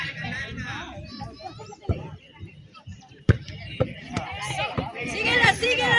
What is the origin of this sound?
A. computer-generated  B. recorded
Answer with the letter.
A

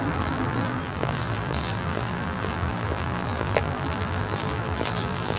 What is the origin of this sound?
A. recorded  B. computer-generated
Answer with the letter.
B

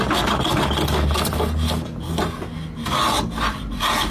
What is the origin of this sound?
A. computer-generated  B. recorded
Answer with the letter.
B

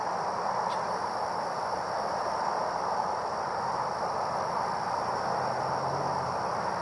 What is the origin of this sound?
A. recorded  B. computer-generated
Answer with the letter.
B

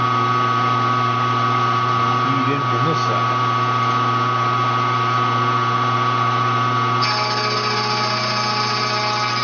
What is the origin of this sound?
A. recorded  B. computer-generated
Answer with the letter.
A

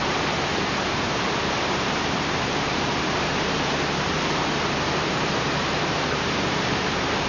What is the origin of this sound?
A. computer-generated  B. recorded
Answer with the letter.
A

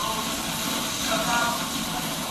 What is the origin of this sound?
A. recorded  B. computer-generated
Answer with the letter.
A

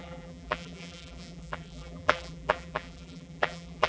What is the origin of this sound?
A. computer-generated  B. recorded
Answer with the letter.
A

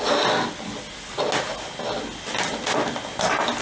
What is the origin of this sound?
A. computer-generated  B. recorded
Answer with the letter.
B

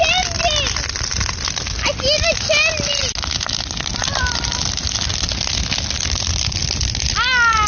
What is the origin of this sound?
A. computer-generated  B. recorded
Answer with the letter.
B